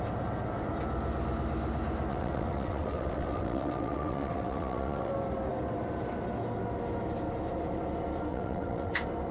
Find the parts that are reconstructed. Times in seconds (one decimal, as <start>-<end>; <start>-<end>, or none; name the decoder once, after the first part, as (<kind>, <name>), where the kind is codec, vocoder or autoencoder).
2.1-5.1 (vocoder, WaveNeXt); 8.3-8.9